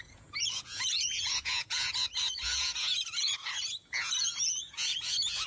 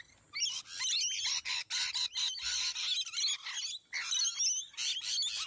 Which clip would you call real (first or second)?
second